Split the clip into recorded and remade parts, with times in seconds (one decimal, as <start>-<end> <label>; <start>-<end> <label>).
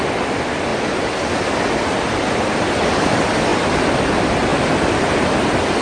0.0-3.5 recorded; 3.5-4.0 remade; 4.0-4.5 recorded; 4.5-5.1 remade; 5.1-5.8 recorded